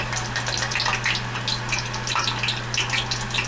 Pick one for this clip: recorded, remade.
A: recorded